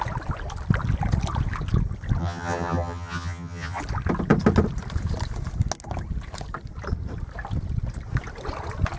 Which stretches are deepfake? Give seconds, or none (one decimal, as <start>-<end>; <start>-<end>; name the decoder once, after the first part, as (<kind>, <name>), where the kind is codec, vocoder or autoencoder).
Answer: 2.2-3.8 (vocoder, HiFi-GAN)